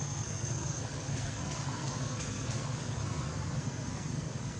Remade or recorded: remade